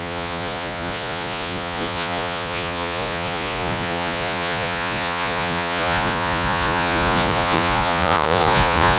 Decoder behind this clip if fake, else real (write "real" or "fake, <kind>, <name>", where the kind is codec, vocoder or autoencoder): fake, vocoder, Vocos